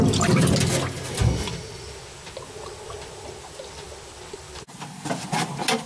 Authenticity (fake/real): real